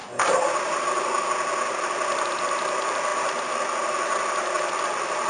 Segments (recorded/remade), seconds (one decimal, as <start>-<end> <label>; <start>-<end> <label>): 0.0-0.8 remade; 0.8-5.3 recorded